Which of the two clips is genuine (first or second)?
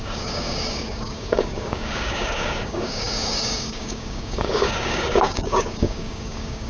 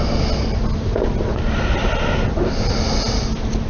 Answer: second